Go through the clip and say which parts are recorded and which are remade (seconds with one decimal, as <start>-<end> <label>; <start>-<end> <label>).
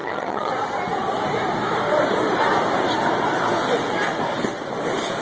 0.0-0.5 remade; 0.5-5.2 recorded